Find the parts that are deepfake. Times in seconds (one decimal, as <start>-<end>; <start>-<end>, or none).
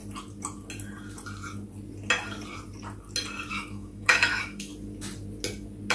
3.5-4.7